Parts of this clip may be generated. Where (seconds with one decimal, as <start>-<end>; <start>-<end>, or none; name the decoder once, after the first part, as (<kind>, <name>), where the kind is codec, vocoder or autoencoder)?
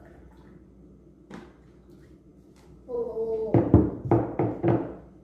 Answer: 2.3-4.6 (vocoder, BigVGAN v2)